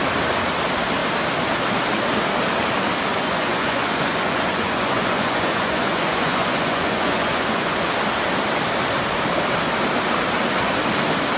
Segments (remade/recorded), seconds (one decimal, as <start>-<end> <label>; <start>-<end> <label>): 0.0-3.1 recorded; 3.1-7.9 remade; 7.9-11.4 recorded